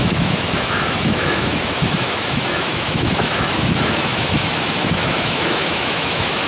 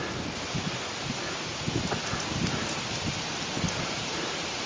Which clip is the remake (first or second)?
first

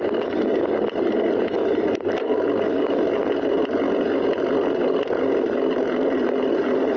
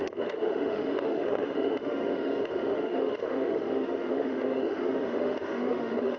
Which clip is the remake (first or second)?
second